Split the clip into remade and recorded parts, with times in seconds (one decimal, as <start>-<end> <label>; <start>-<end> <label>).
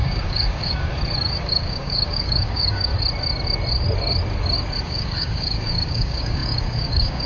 0.0-0.9 remade; 0.9-1.4 recorded; 1.4-2.9 remade; 2.9-4.8 recorded; 4.8-7.3 remade